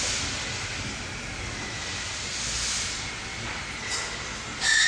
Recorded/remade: recorded